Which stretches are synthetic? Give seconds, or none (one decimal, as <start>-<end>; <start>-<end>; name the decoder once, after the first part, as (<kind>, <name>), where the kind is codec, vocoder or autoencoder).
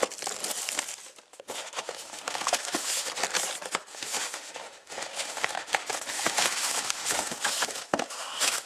1.3-3.1 (autoencoder, DAC-VAE); 3.9-8.7